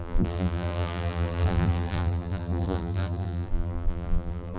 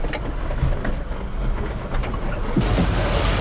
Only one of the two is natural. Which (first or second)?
second